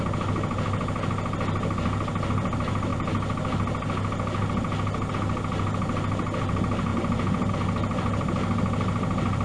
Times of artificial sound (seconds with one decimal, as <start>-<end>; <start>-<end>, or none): none